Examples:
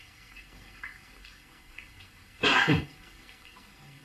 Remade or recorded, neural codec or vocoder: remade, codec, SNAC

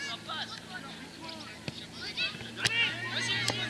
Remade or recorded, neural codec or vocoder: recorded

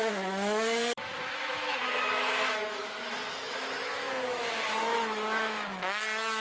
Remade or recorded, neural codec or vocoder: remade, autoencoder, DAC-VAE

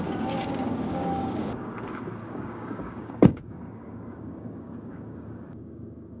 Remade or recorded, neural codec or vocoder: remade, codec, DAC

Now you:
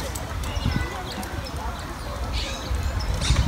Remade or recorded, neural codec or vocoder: recorded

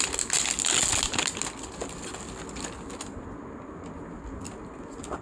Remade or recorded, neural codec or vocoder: recorded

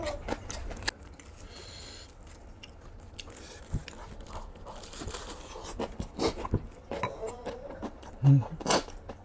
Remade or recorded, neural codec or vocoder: recorded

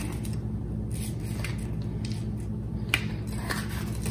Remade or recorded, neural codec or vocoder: recorded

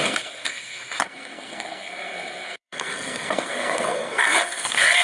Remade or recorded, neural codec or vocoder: remade, codec, SNAC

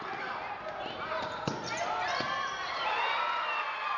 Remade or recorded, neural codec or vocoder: remade, vocoder, BigVGAN v2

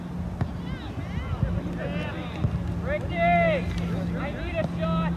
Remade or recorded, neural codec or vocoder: recorded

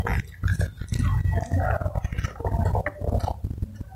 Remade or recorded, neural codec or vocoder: recorded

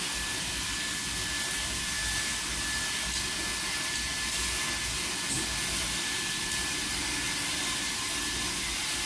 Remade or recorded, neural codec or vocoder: recorded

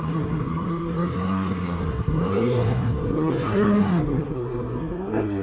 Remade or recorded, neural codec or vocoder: remade, codec, SNAC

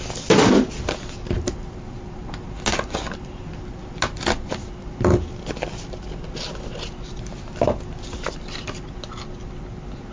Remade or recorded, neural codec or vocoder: recorded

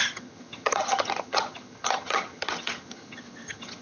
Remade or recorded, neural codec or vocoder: remade, vocoder, HiFi-GAN